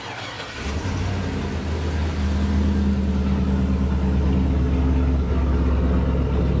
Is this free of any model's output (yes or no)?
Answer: yes